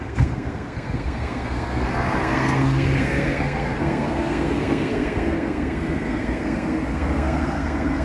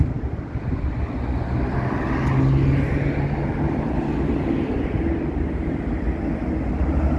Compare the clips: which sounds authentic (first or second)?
second